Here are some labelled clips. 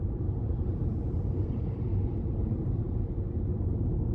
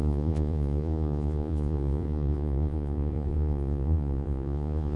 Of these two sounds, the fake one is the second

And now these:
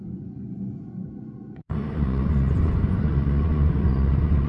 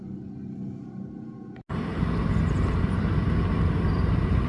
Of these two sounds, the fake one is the first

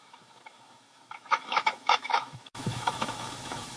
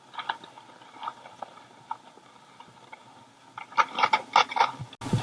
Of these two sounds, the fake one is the first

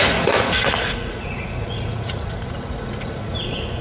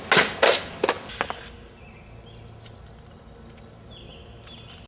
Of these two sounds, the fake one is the first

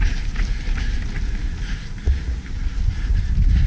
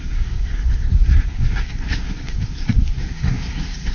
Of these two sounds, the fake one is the second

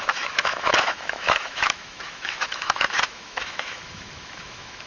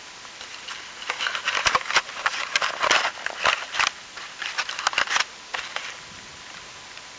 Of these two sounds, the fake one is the first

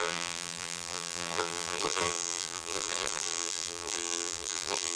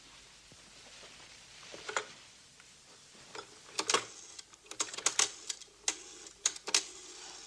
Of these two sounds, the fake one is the first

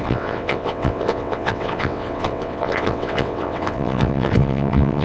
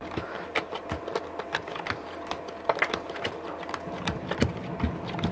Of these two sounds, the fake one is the first